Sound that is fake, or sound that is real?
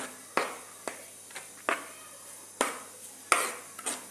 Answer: real